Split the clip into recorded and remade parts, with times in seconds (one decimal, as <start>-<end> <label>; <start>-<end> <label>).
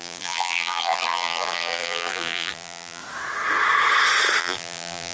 0.0-3.0 remade; 3.0-4.4 recorded; 4.4-5.1 remade